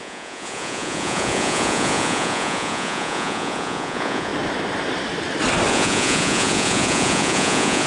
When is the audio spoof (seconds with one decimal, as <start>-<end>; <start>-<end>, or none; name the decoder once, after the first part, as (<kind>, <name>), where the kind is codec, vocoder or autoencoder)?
0.0-4.3 (vocoder, Vocos); 5.7-7.9